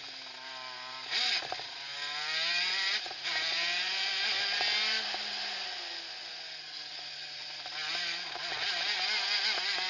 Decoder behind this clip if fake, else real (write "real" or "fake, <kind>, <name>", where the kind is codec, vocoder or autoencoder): real